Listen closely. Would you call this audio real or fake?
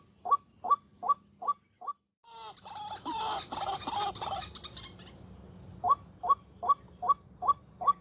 real